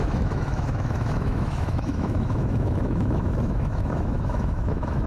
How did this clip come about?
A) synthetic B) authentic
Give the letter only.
A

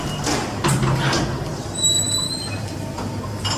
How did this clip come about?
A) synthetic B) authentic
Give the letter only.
B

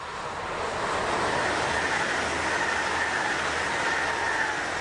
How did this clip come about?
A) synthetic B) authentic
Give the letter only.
B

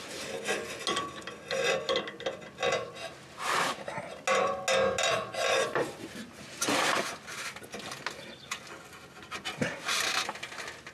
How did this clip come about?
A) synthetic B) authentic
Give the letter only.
B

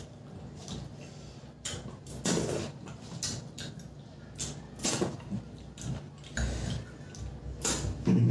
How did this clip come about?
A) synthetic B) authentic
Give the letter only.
B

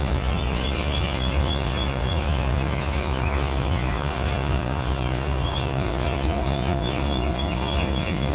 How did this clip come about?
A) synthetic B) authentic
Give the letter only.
A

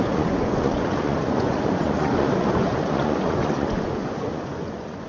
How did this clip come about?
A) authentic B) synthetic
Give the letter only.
B